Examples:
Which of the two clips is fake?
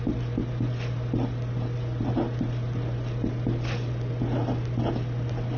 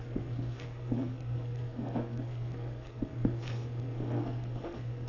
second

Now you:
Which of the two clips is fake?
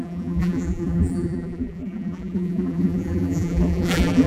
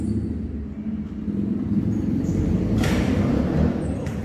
first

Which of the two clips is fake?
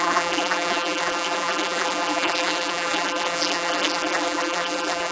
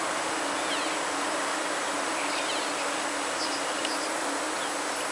first